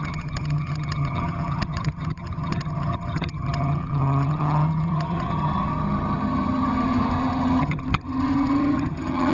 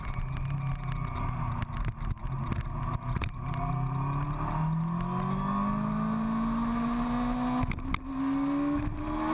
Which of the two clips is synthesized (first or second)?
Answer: first